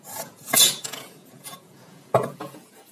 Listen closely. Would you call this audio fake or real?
fake